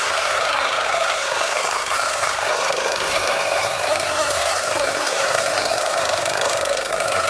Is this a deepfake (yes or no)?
yes